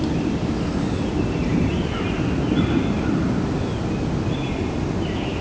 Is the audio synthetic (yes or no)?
no